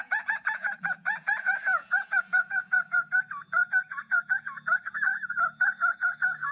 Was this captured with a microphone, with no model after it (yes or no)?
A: no